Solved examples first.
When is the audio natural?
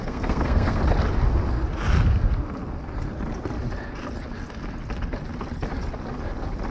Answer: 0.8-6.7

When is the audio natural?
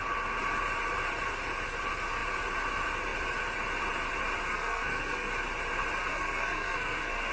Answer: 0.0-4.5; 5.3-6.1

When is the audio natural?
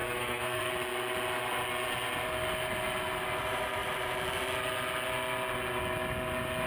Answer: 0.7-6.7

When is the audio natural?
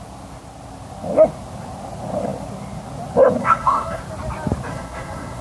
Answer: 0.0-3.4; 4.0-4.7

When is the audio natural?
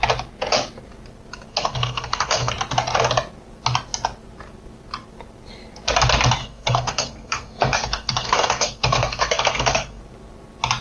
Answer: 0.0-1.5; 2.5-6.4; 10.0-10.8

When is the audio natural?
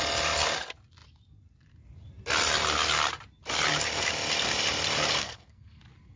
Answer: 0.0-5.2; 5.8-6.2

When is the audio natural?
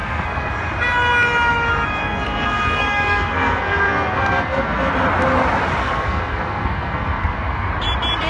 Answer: 0.5-2.0; 4.9-5.8; 7.7-8.3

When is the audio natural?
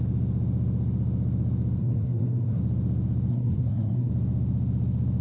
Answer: 0.0-1.8; 2.6-3.3; 4.1-5.2